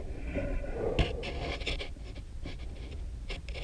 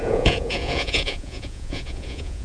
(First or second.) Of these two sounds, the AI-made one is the second